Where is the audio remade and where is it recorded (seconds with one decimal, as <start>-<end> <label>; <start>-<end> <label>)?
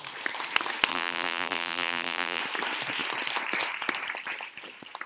0.0-0.9 recorded; 0.9-2.4 remade; 2.4-5.1 recorded